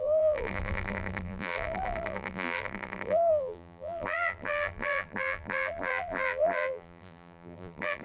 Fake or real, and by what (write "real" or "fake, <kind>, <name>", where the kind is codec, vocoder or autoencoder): fake, vocoder, BigVGAN v2